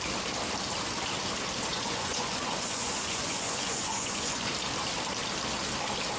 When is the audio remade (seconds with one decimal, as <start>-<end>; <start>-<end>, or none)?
1.7-4.5